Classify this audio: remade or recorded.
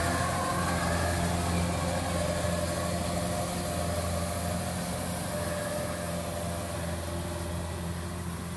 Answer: recorded